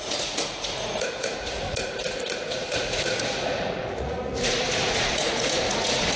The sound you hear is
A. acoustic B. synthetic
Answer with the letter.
B